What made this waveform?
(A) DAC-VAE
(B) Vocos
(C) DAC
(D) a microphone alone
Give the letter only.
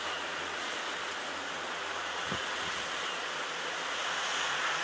B